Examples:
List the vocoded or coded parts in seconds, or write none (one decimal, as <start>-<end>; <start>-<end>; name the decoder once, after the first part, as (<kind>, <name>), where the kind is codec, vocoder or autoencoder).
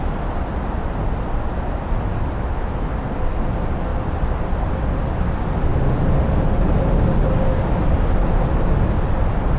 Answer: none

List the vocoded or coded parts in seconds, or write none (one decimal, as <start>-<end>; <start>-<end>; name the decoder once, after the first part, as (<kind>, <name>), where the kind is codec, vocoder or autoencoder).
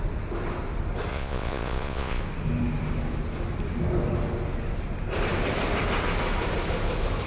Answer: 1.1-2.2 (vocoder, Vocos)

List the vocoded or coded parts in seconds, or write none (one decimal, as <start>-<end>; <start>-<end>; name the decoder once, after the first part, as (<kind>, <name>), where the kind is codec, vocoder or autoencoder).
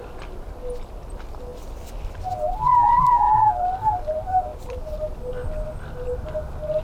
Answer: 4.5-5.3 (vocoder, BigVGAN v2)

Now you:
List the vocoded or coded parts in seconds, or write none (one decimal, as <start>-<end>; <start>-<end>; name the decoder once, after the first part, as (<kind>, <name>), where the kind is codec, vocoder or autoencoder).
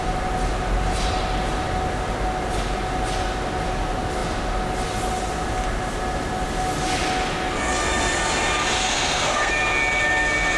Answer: 8.8-9.5 (codec, SNAC)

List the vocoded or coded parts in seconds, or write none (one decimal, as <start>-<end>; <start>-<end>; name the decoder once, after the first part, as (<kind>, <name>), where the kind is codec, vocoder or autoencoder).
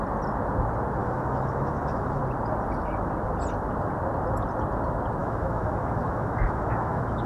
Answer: 1.0-2.2 (autoencoder, DAC-VAE); 5.2-7.3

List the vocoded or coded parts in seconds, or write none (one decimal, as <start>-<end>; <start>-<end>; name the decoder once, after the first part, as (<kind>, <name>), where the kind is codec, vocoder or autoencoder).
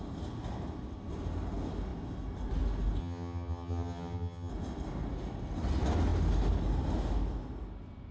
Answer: 3.0-4.5 (vocoder, HiFi-GAN)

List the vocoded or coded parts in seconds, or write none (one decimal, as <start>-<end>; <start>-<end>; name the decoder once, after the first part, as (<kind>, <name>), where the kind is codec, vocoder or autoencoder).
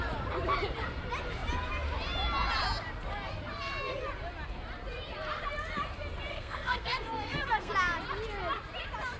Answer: 6.3-7.7 (codec, SNAC)